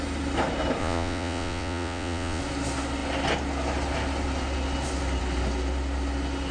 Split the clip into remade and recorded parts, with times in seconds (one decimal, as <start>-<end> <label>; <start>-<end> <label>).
0.0-0.8 recorded; 0.8-2.4 remade; 2.4-6.5 recorded